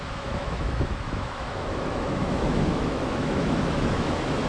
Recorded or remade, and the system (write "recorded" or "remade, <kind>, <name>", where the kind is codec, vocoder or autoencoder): remade, autoencoder, DAC-VAE